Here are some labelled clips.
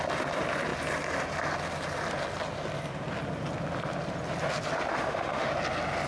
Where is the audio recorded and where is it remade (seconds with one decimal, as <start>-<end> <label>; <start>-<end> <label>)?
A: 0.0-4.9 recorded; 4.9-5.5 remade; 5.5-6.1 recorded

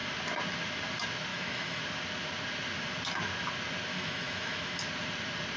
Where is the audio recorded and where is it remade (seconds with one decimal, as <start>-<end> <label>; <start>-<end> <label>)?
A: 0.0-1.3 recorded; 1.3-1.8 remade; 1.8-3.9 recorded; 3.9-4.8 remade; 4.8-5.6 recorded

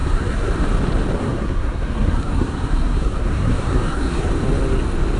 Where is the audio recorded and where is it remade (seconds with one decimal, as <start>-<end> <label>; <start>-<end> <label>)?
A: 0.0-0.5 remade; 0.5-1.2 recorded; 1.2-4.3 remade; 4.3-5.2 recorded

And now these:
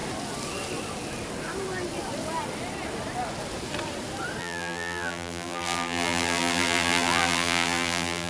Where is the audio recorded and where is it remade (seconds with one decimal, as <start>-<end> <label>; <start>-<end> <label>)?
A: 0.0-4.4 recorded; 4.4-8.3 remade